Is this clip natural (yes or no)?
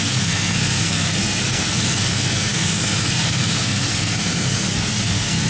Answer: no